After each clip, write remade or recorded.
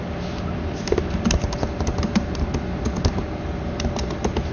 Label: recorded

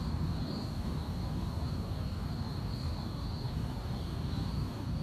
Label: remade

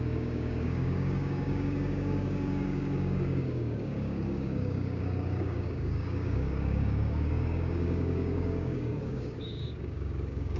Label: remade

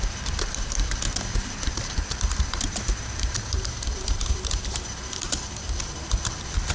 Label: remade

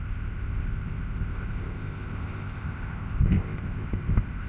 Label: remade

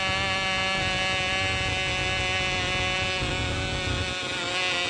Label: recorded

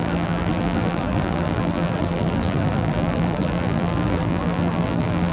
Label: remade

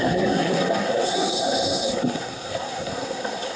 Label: remade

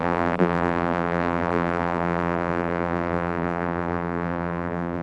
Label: remade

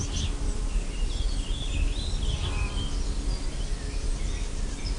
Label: recorded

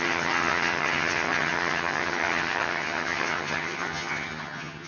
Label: remade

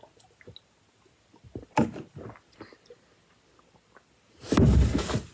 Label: recorded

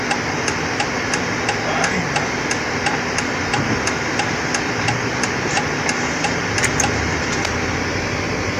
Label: recorded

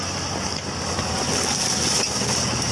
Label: recorded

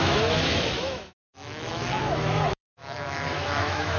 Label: remade